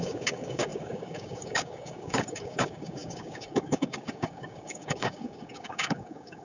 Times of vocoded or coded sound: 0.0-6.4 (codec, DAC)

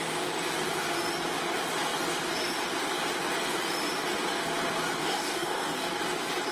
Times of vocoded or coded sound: 5.0-6.0 (codec, DAC)

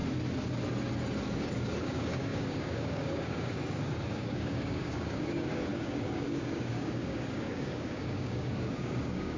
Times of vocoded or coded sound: 1.8-9.4 (codec, DAC)

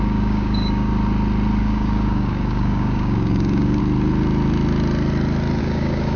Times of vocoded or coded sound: 0.0-0.9 (codec, DAC); 1.6-3.8; 5.6-6.2

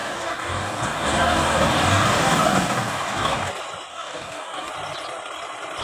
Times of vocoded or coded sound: 0.0-3.5 (codec, DAC); 3.9-4.7

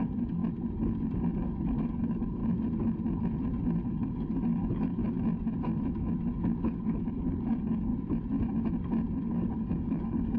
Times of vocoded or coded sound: 0.0-0.4 (codec, DAC); 1.3-2.4; 3.9-5.0; 6.3-7.9; 9.3-10.4

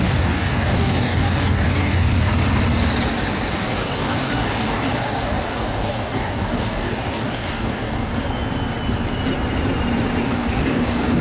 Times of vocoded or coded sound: 0.0-2.3 (codec, DAC); 3.5-8.1; 10.2-11.2

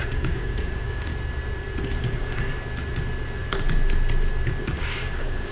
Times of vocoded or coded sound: 0.0-1.1 (codec, DAC); 1.8-2.5; 4.6-5.5